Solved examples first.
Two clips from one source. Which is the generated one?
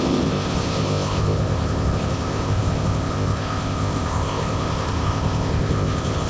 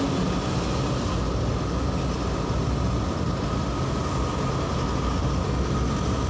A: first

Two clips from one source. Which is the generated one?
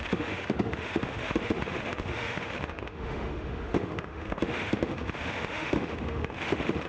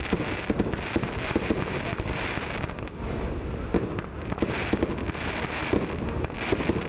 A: first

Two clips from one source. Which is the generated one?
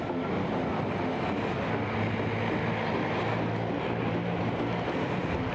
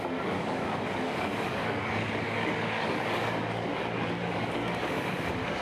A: second